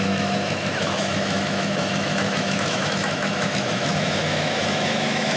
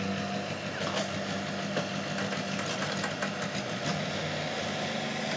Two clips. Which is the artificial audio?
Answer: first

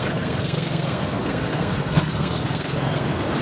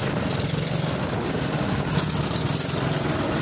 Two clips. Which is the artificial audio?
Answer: first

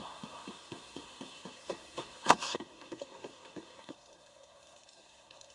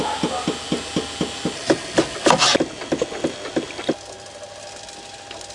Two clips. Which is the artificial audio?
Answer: first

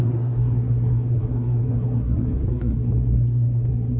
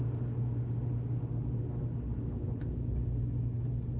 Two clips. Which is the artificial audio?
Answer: first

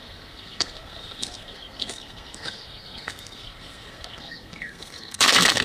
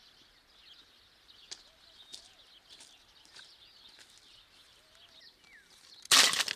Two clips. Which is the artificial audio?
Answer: first